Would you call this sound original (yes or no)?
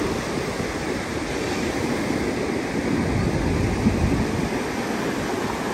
yes